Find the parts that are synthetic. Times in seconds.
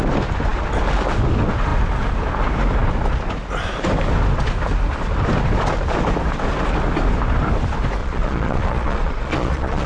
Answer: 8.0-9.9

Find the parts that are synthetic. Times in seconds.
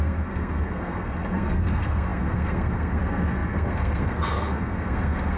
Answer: 0.0-5.4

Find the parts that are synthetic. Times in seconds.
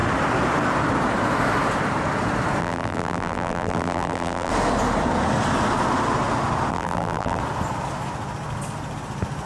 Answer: 2.6-4.5; 6.7-7.4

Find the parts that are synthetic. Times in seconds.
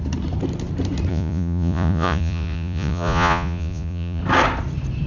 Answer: 1.1-4.2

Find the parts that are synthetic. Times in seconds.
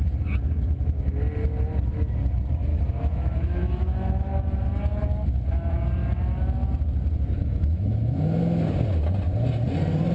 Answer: 2.7-4.4; 7.4-8.4